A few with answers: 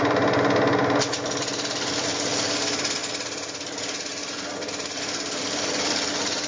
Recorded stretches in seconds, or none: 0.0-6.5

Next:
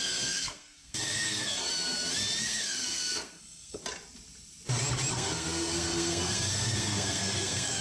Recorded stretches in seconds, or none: 1.7-2.4; 3.8-5.1

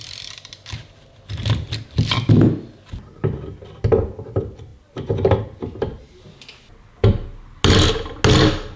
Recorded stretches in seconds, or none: 0.0-8.8